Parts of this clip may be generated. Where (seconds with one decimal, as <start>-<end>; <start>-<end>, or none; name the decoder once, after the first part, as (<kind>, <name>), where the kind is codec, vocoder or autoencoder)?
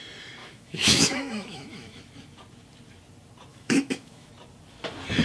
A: 0.4-2.0 (autoencoder, DAC-VAE); 3.5-4.3